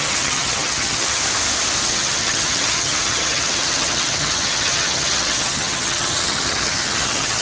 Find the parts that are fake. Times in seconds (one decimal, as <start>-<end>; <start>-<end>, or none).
0.0-1.2; 1.8-7.4